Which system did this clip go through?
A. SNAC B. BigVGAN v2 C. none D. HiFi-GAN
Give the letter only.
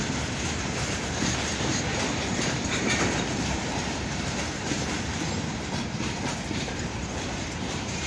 B